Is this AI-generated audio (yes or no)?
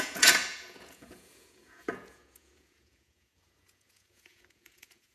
yes